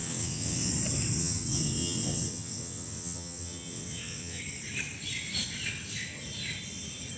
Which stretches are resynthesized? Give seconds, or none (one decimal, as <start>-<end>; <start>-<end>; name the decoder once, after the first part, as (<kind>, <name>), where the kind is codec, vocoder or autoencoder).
0.0-0.7 (vocoder, WaveNeXt); 1.2-4.4